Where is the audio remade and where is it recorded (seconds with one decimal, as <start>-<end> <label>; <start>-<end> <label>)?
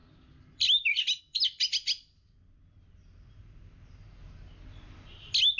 0.0-5.6 recorded